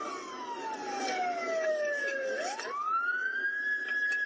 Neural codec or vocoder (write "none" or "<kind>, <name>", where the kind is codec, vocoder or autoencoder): none